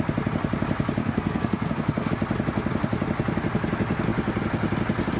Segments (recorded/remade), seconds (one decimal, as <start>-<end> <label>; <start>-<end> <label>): 0.0-1.0 recorded; 1.0-2.1 remade; 2.1-5.2 recorded